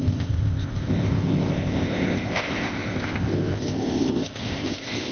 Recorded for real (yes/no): no